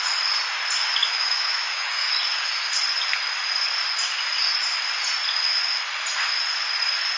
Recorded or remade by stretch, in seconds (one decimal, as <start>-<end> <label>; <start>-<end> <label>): 0.0-1.0 recorded; 1.0-2.1 remade; 2.1-7.2 recorded